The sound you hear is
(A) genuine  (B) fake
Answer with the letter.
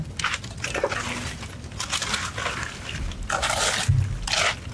A